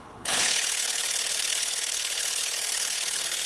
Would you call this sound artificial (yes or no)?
yes